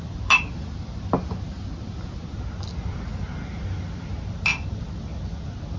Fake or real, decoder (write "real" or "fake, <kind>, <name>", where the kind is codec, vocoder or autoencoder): real